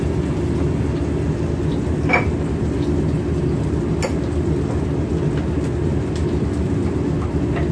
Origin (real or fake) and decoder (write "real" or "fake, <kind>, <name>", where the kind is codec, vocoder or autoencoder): real